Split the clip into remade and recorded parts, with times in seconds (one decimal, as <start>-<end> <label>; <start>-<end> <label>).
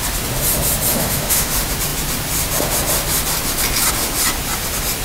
0.0-0.9 recorded; 0.9-1.5 remade; 1.5-5.0 recorded